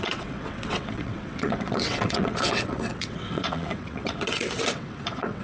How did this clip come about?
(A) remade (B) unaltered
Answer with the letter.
A